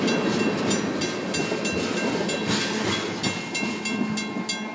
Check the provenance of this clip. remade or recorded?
recorded